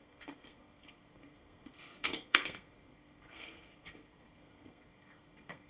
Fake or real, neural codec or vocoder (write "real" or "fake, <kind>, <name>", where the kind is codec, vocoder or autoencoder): fake, codec, SNAC